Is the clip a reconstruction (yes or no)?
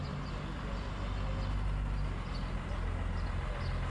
no